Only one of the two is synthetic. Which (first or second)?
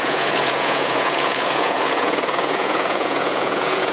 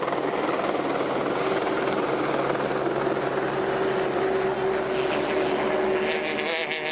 first